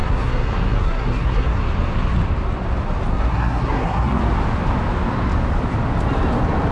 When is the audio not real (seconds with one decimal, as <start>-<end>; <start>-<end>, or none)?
0.0-1.6; 3.1-4.2